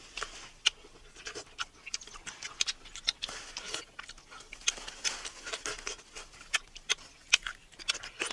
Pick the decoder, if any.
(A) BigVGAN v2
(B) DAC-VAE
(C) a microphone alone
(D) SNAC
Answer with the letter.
C